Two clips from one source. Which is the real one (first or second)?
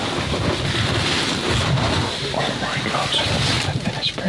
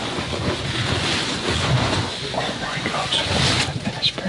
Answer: first